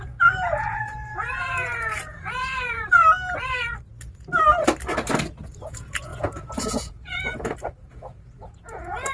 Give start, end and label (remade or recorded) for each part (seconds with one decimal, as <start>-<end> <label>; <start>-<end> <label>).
0.0-3.0 remade; 3.0-5.6 recorded; 5.6-9.1 remade